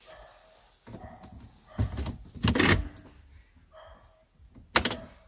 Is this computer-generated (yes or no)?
no